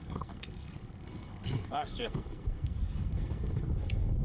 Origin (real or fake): fake